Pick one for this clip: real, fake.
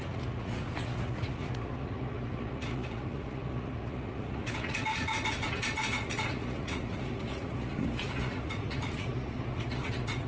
fake